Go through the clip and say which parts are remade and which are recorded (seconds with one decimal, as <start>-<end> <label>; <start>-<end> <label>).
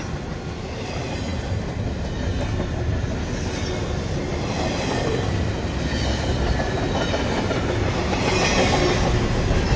0.0-9.8 recorded